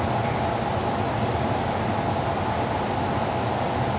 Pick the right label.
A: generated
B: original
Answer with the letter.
B